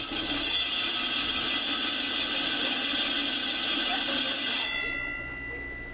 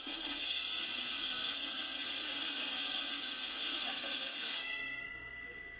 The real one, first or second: first